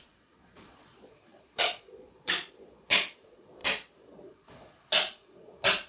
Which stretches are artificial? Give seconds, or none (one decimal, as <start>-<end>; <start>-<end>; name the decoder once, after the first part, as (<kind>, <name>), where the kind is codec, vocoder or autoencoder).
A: 0.0-5.9 (vocoder, Vocos)